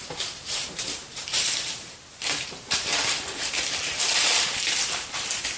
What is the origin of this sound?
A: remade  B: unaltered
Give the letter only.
A